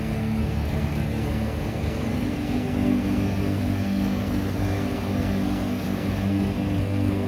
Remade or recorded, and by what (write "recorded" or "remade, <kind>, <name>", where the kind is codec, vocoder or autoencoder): remade, codec, SNAC